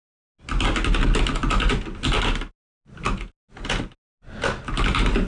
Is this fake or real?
real